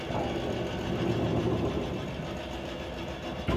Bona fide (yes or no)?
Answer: yes